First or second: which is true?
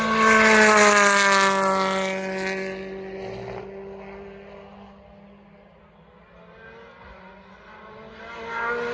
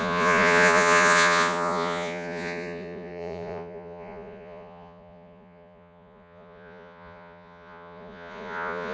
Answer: first